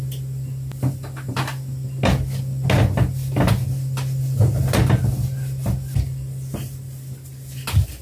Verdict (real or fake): real